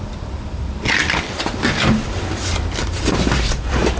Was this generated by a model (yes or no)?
yes